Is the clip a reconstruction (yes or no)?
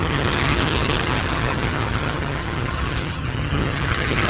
yes